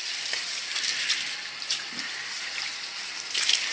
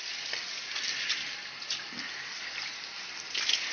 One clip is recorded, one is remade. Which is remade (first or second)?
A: first